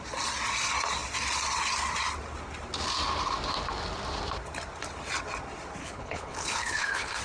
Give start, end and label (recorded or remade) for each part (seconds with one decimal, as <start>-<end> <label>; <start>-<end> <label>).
0.0-5.8 recorded; 5.8-7.2 remade